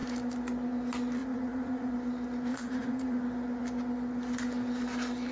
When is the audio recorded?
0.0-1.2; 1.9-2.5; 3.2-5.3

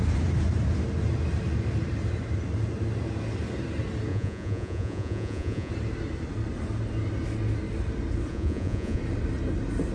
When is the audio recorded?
0.0-4.1; 5.7-8.3; 9.0-9.9

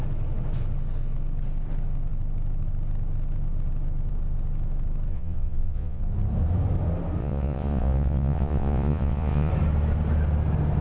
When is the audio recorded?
0.0-5.1; 6.0-7.2; 9.5-10.8

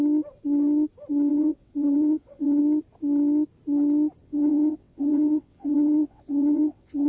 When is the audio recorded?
0.0-1.3; 2.6-4.2

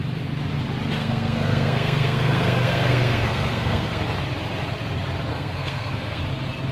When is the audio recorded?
0.0-1.0; 4.0-5.3; 6.2-6.7

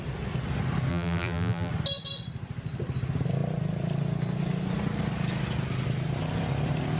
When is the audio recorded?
0.0-0.9; 1.7-7.0

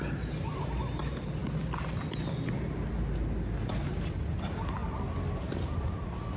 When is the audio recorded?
0.0-6.4

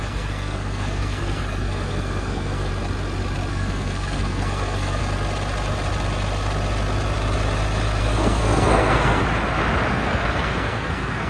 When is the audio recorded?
2.7-3.5; 5.0-8.0; 9.2-9.9